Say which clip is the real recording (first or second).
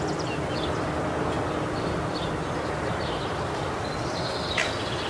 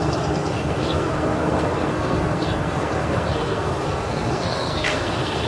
first